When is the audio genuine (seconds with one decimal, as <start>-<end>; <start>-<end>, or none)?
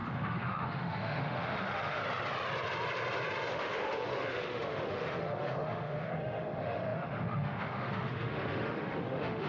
2.0-3.5